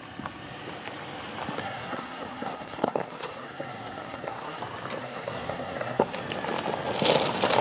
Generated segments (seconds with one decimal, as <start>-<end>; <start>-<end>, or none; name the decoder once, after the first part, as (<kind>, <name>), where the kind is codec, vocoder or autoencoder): 1.6-4.6 (codec, SNAC); 5.0-6.2